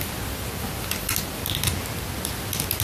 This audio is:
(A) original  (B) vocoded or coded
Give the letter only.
A